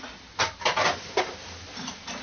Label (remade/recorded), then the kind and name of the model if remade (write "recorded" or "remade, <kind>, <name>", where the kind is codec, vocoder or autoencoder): recorded